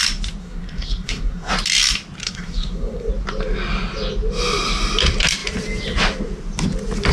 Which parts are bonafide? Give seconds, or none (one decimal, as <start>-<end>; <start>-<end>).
0.0-0.4; 1.5-2.2; 3.1-7.1